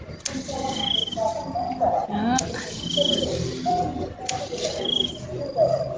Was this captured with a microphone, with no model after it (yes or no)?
yes